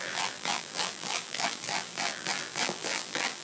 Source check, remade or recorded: remade